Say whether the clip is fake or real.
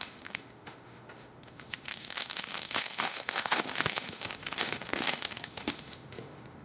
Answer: fake